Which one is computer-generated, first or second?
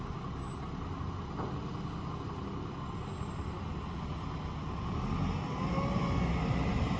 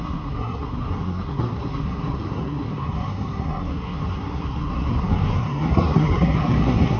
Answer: second